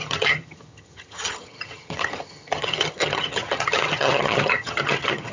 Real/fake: fake